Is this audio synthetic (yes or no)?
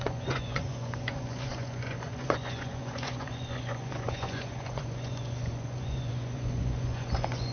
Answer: yes